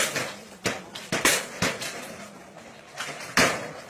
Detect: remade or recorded recorded